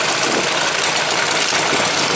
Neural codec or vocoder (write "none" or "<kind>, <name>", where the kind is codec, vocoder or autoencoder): none